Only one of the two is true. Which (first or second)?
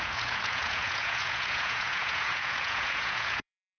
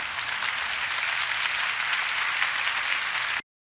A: second